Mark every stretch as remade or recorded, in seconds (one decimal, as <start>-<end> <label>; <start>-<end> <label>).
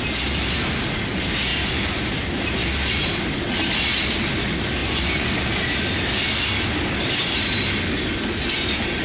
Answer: 0.0-4.8 recorded; 4.8-5.3 remade; 5.3-9.0 recorded